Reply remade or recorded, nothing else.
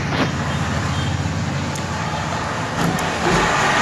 recorded